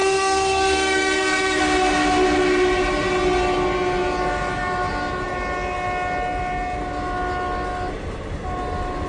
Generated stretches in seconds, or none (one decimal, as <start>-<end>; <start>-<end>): 0.0-1.6

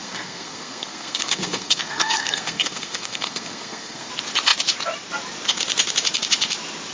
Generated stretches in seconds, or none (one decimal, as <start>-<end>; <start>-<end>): 0.0-4.1

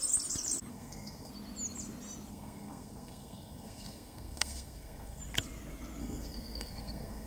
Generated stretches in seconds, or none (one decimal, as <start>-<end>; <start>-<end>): 0.7-1.3; 2.3-5.2; 6.0-7.3

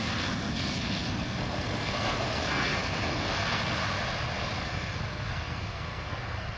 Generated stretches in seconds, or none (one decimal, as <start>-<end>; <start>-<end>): 0.0-3.8; 4.6-6.6

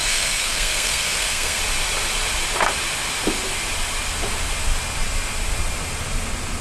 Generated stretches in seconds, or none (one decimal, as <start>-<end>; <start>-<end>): 0.0-1.6